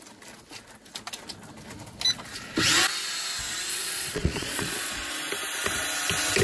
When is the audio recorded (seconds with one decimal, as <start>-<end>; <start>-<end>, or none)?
0.0-3.7; 5.1-6.4